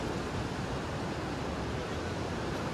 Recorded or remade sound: recorded